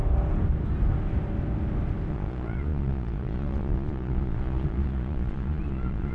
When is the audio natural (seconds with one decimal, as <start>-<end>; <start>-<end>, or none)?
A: 0.0-2.1